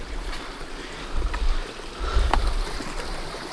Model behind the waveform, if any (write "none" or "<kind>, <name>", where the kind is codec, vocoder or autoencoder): none